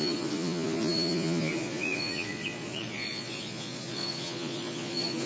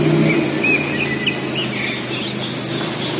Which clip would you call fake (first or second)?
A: first